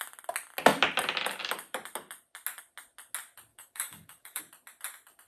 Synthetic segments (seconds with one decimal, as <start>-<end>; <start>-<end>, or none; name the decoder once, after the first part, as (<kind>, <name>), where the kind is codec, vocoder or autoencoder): 3.5-4.4 (codec, DAC)